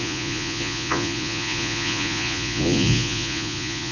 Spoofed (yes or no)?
yes